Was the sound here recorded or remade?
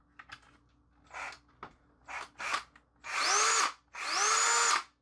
recorded